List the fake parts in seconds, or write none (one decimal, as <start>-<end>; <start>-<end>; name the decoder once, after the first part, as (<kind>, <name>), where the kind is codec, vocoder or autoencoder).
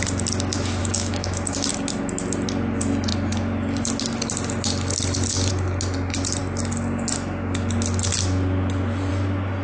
0.8-1.7 (autoencoder, DAC-VAE)